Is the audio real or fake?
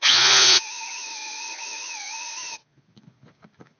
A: fake